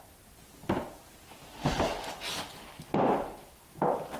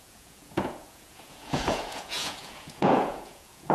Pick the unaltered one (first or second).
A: first